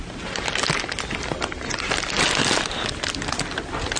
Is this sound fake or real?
real